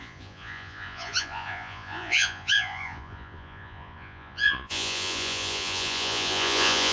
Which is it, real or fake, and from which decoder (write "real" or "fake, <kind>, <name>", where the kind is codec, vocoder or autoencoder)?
fake, vocoder, Vocos